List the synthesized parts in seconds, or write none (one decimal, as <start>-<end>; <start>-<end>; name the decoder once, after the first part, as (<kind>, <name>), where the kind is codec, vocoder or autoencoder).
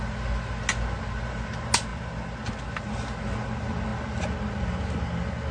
none